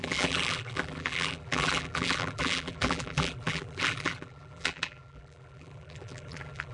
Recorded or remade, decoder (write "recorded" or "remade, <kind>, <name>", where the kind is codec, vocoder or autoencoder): remade, vocoder, BigVGAN v2